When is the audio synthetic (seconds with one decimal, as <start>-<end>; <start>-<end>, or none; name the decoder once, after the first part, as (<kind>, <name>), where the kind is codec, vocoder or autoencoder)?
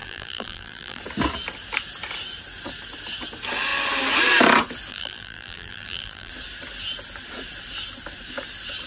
0.0-1.0 (vocoder, BigVGAN v2); 4.9-6.3